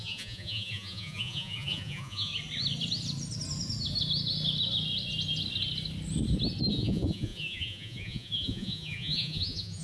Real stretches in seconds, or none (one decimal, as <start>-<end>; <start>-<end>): 2.3-6.7